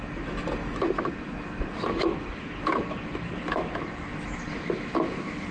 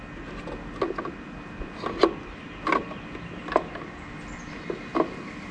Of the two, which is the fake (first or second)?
first